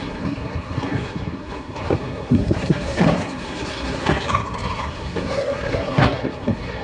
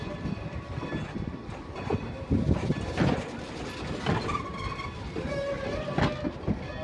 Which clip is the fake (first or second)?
first